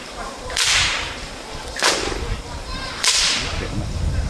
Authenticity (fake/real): fake